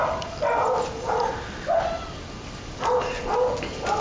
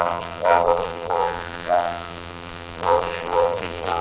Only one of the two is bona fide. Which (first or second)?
first